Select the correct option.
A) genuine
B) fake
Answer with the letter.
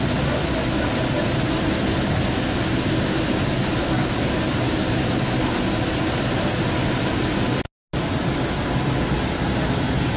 A